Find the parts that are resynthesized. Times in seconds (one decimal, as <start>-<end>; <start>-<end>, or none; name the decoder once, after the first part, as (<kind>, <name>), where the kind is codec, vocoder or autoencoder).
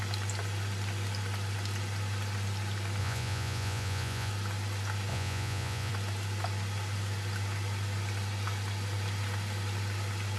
3.0-4.3 (vocoder, Vocos); 5.1-5.9